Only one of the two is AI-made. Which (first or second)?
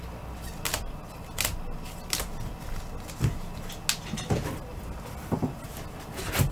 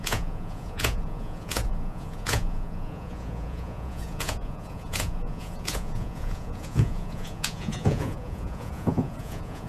second